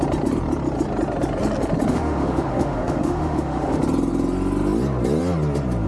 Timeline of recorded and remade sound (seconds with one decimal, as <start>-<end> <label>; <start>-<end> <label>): 0.0-1.9 recorded; 1.9-3.8 remade; 3.8-5.9 recorded